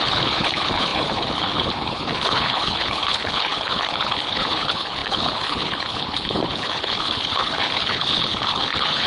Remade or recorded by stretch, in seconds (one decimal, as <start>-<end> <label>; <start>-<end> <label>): 0.0-9.1 remade

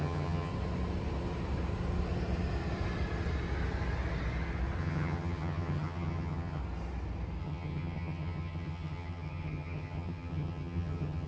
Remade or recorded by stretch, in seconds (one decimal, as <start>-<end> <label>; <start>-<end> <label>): 0.0-0.5 remade; 0.5-4.8 recorded; 4.8-6.6 remade; 6.6-7.4 recorded; 7.4-11.3 remade

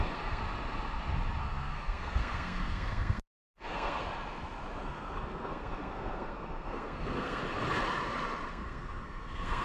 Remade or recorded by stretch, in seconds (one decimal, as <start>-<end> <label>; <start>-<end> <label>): 0.0-0.4 remade; 0.4-1.4 recorded; 1.4-4.0 remade; 4.0-4.8 recorded; 4.8-7.4 remade; 7.4-8.5 recorded; 8.5-9.6 remade

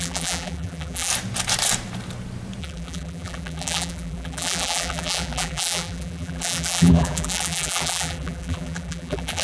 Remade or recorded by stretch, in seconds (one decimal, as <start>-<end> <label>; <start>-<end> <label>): 0.0-1.1 remade; 1.1-2.6 recorded; 2.6-9.4 remade